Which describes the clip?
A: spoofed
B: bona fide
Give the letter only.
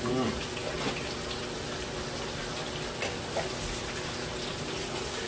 B